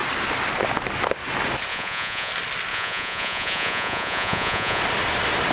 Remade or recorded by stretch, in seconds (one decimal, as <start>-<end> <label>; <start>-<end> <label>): 0.0-1.7 recorded; 1.7-2.3 remade; 2.3-2.7 recorded; 2.7-4.8 remade; 4.8-5.5 recorded

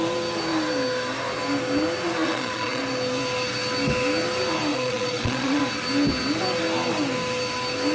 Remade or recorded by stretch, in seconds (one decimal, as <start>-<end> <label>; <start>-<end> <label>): 0.0-2.2 recorded; 2.2-2.8 remade; 2.8-4.7 recorded; 4.7-5.6 remade; 5.6-7.9 recorded

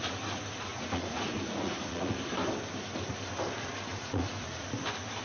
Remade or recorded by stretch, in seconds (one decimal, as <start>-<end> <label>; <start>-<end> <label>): 0.0-0.7 recorded; 0.7-2.3 remade; 2.3-3.9 recorded; 3.9-4.8 remade; 4.8-5.2 recorded